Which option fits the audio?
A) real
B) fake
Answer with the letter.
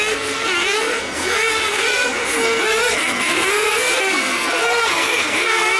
B